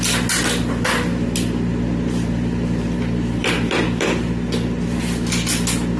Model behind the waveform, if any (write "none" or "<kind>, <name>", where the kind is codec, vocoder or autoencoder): none